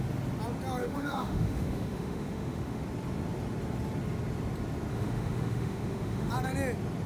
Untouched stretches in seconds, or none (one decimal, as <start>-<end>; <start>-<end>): 0.0-0.8; 2.8-4.9; 6.3-7.1